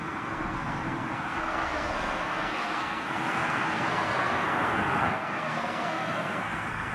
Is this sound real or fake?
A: fake